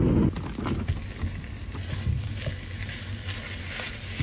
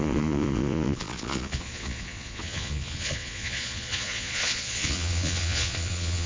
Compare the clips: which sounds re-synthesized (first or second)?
second